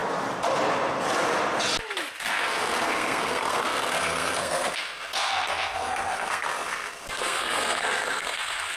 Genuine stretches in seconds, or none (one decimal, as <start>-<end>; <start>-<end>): 0.0-2.2